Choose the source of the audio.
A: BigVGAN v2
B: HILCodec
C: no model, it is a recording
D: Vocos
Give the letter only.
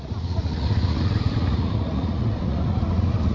D